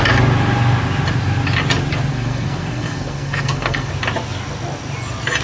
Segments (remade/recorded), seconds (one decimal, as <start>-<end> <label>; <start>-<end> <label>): 0.0-2.1 recorded; 2.1-3.9 remade; 3.9-5.4 recorded